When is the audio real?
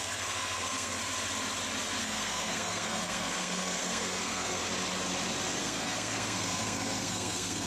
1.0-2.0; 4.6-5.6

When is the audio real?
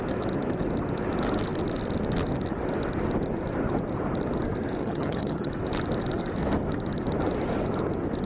0.0-4.8; 5.5-8.3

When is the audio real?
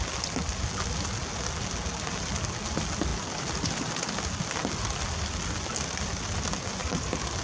0.0-3.1; 4.1-4.6; 6.2-6.8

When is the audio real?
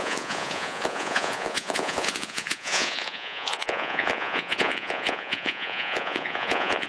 none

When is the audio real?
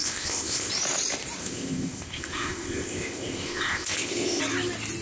0.7-1.4; 4.4-5.0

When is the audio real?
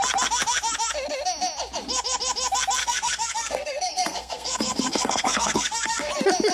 0.0-2.8; 6.1-6.5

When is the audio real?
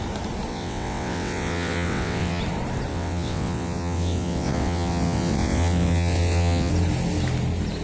0.0-0.5; 2.4-2.9; 6.7-7.8